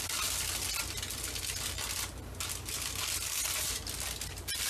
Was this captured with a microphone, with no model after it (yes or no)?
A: yes